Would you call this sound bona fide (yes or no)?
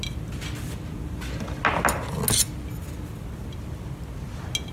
yes